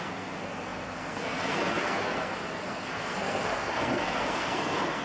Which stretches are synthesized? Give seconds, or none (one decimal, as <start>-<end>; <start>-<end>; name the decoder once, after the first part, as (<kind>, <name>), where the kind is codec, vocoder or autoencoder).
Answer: 0.0-5.0 (codec, SNAC)